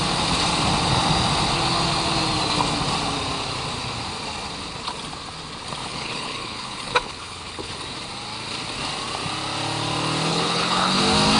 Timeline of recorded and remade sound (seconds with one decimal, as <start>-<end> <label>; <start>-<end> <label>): 0.0-5.8 recorded; 5.8-7.7 remade; 7.7-10.3 recorded; 10.3-11.0 remade; 11.0-11.4 recorded